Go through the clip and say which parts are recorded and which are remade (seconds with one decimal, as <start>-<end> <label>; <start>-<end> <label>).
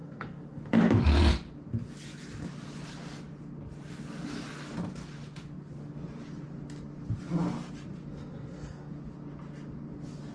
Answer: 0.0-0.6 remade; 0.6-8.1 recorded; 8.1-8.9 remade; 8.9-10.3 recorded